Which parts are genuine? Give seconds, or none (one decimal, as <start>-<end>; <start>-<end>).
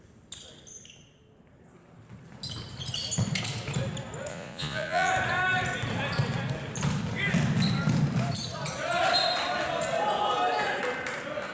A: 0.0-4.3; 5.1-11.5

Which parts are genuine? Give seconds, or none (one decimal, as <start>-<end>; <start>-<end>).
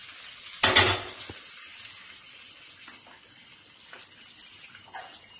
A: 0.0-5.4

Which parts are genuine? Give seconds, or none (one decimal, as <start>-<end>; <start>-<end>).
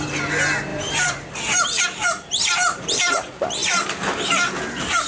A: 0.0-0.7; 3.0-3.6; 4.2-5.1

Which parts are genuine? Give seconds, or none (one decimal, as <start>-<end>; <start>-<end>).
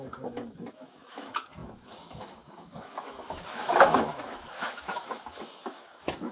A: none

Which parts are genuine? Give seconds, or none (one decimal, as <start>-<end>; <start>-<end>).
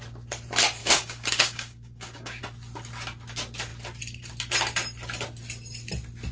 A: 0.0-0.8; 2.4-6.3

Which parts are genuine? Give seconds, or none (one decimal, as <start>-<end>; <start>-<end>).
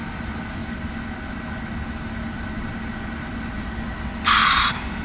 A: 0.0-5.0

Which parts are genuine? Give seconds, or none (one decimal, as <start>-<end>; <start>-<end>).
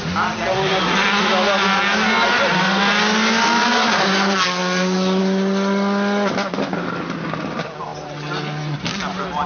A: 0.0-9.5